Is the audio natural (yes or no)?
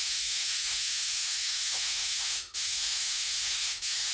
no